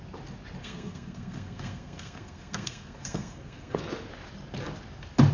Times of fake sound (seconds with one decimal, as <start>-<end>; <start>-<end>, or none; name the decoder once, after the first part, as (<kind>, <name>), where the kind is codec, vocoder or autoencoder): 0.6-3.8 (codec, SNAC)